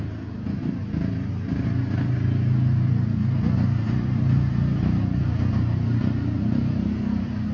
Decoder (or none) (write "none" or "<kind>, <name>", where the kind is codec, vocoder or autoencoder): none